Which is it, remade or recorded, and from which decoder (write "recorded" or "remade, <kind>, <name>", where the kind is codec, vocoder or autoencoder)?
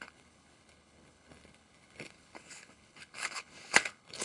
remade, codec, HILCodec